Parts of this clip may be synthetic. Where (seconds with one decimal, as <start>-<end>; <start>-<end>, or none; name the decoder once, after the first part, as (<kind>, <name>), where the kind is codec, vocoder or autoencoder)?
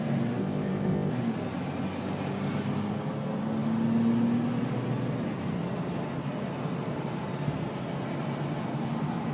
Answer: 0.4-1.1 (codec, ZipCodec)